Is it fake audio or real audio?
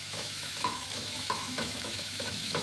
fake